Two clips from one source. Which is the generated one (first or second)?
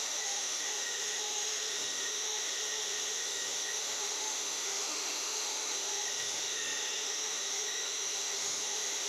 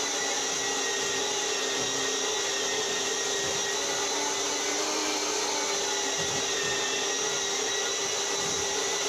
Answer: first